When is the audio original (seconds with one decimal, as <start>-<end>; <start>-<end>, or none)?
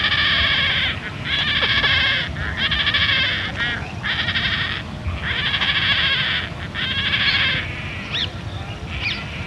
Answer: 0.0-9.5